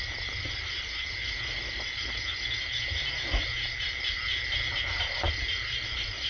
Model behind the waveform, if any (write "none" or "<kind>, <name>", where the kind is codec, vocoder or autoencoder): none